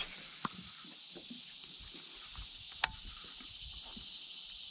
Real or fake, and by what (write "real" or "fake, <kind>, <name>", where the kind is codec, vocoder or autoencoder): real